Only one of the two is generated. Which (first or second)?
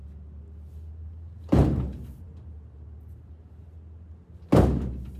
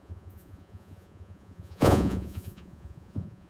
second